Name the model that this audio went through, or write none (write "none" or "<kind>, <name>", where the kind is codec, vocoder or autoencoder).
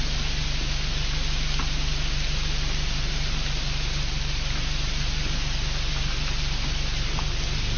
none